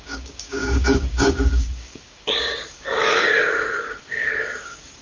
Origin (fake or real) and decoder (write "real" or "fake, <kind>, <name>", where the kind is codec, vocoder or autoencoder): fake, codec, DAC